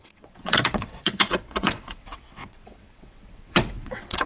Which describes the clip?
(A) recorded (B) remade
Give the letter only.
B